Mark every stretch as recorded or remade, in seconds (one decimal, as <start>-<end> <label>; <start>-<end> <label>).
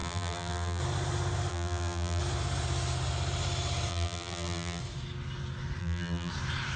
0.0-0.8 remade; 0.8-1.5 recorded; 1.5-2.2 remade; 2.2-3.9 recorded; 3.9-4.8 remade; 4.8-5.8 recorded; 5.8-6.3 remade; 6.3-6.8 recorded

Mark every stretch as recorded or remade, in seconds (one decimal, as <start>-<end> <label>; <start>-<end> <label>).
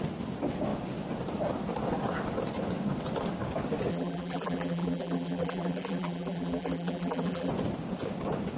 0.0-3.9 recorded; 3.9-7.5 remade; 7.5-8.6 recorded